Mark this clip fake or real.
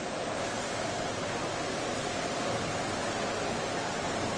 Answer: real